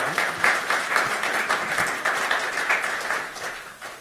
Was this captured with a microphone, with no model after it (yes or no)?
no